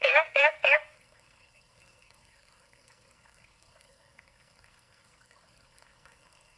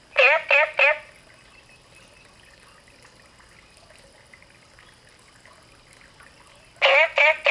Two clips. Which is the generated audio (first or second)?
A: first